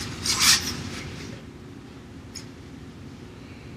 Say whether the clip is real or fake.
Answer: fake